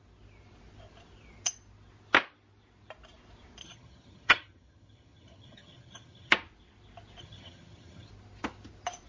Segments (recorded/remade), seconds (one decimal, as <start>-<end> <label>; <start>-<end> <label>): 0.0-3.6 recorded; 3.6-6.3 remade; 6.3-7.2 recorded; 7.2-8.1 remade; 8.1-9.1 recorded